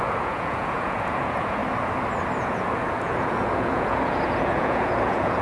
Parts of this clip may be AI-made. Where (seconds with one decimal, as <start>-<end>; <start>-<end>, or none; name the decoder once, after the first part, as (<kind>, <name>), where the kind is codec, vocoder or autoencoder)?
0.0-1.6 (vocoder, Vocos); 2.4-5.4